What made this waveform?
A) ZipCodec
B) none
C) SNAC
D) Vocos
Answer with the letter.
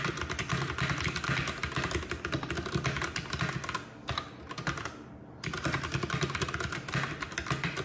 B